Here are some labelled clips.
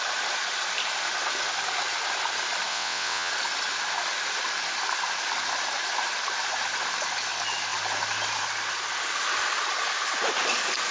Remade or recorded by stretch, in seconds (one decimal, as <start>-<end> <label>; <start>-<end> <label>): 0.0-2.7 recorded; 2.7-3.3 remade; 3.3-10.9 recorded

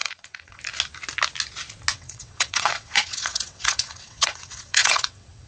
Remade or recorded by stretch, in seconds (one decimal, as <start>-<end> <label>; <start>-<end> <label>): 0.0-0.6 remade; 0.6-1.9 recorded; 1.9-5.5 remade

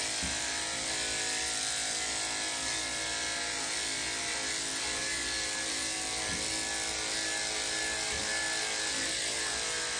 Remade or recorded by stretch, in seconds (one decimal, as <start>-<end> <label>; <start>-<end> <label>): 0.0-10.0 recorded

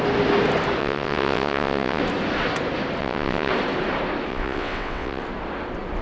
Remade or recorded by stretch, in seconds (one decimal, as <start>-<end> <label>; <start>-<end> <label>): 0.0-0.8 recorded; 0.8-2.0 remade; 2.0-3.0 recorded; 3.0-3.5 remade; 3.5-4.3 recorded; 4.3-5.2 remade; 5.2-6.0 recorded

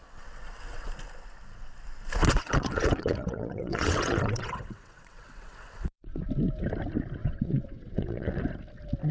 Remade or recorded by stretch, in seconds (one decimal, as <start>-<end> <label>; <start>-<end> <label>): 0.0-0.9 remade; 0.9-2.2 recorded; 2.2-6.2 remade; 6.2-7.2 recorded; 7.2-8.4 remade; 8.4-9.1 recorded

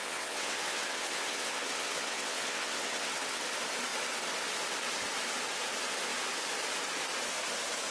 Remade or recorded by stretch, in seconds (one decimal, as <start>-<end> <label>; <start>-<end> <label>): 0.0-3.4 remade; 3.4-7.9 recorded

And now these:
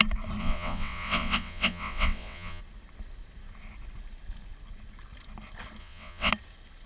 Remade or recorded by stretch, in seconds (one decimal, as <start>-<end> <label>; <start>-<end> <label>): 0.0-0.4 recorded; 0.4-2.6 remade; 2.6-5.8 recorded; 5.8-6.3 remade; 6.3-6.9 recorded